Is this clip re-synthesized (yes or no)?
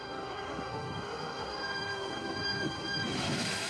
yes